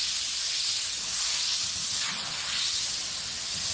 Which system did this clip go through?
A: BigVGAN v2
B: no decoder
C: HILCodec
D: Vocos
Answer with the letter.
B